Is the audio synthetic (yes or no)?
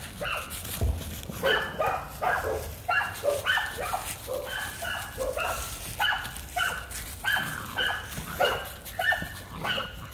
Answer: no